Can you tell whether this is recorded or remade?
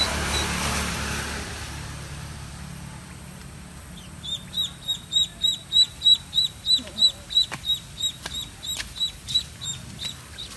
remade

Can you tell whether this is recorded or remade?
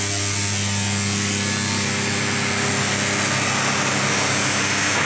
recorded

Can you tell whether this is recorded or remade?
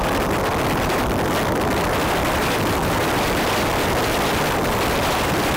remade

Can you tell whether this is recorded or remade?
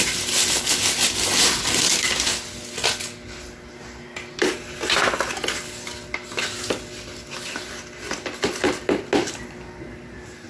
recorded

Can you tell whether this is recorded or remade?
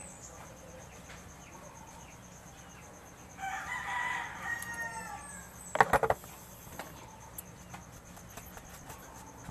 recorded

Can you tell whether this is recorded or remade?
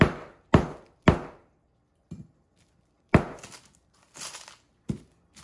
recorded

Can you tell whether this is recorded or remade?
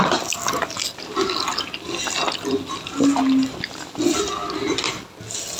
recorded